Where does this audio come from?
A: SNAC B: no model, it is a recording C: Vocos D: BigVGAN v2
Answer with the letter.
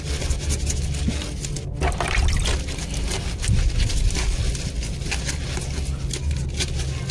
B